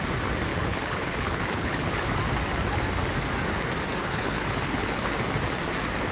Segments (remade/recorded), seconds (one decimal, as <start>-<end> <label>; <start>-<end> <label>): 0.0-0.5 recorded; 0.5-2.2 remade; 2.2-4.0 recorded; 4.0-5.1 remade; 5.1-6.1 recorded